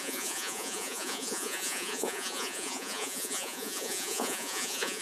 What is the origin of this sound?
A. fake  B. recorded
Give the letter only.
A